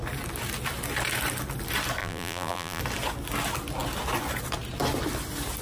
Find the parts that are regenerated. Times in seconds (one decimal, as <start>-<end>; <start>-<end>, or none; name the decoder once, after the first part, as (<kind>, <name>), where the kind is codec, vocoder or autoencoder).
2.0-2.8 (vocoder, BigVGAN v2)